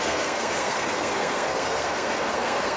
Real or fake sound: fake